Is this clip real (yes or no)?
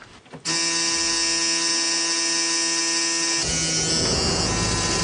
yes